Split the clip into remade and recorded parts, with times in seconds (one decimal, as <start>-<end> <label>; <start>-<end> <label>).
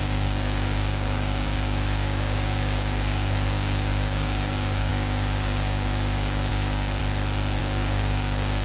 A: 0.0-7.0 remade; 7.0-7.6 recorded; 7.6-8.6 remade